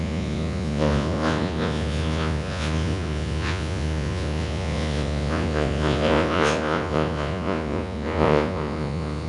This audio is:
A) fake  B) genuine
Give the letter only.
A